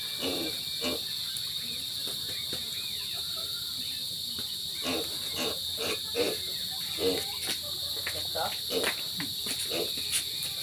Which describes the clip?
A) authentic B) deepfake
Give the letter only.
A